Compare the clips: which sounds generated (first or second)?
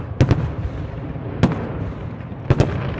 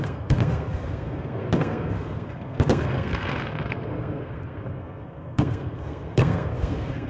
second